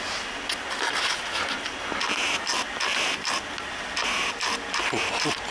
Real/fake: real